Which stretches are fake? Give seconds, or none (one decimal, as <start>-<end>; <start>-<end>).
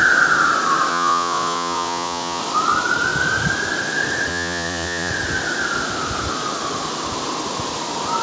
0.9-2.4; 4.3-5.1